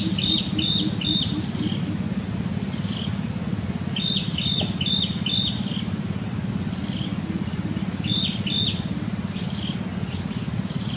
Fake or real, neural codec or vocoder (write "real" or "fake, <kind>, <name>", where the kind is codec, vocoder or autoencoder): real